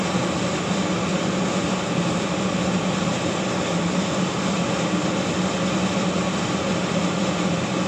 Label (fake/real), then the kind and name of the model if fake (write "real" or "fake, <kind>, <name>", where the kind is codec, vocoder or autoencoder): real